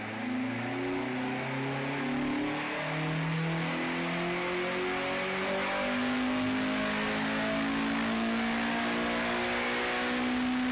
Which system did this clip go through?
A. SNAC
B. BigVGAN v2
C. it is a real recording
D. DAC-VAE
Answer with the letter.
C